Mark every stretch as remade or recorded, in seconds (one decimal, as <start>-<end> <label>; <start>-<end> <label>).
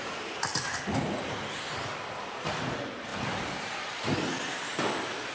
0.0-5.3 recorded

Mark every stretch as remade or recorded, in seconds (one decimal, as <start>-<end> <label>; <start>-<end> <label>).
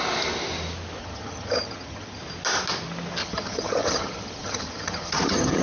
0.0-1.0 recorded; 1.0-2.2 remade; 2.2-3.2 recorded; 3.2-5.6 remade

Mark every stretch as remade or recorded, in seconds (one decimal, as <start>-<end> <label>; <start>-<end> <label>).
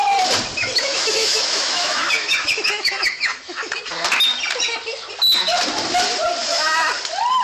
0.0-0.6 recorded; 0.6-3.8 remade; 3.8-6.4 recorded; 6.4-6.9 remade; 6.9-7.4 recorded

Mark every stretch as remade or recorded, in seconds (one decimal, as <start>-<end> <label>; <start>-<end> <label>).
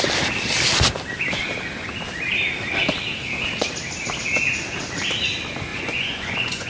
0.0-5.7 recorded; 5.7-6.7 remade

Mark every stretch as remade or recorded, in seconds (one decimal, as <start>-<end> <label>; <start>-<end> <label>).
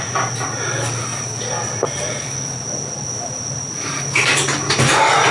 0.0-5.3 recorded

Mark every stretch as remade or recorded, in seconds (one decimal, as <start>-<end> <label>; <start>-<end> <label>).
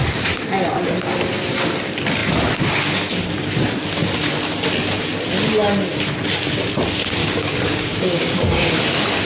0.0-7.2 recorded; 7.2-8.7 remade; 8.7-9.2 recorded